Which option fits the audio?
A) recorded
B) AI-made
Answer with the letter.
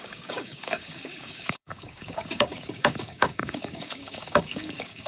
B